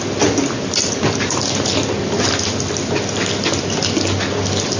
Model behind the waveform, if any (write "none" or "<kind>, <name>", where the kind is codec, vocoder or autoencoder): none